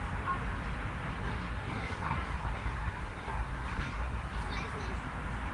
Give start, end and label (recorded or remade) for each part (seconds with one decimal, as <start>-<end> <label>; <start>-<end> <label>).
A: 0.0-1.1 recorded; 1.1-4.4 remade; 4.4-5.5 recorded